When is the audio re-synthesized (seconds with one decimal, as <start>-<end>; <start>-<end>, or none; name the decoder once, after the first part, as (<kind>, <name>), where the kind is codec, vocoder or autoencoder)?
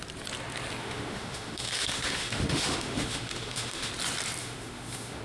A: 0.8-3.9 (autoencoder, DAC-VAE); 4.4-5.2